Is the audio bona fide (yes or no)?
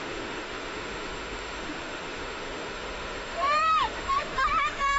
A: no